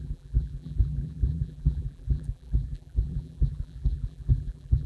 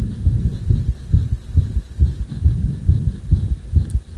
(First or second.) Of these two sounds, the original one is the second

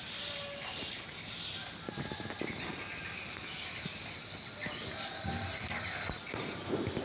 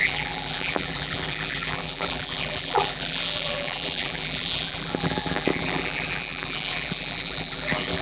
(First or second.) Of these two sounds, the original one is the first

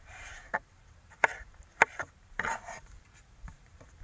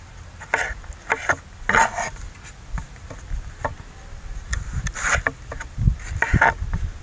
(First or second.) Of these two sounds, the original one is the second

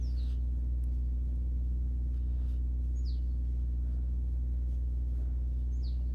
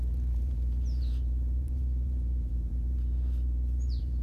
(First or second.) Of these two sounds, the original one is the first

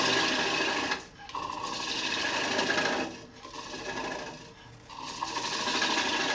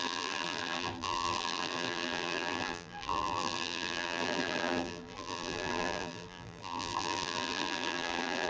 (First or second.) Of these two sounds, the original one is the first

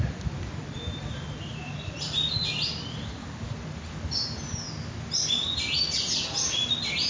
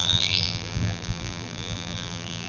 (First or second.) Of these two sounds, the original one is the first